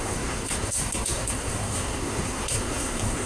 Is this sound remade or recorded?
remade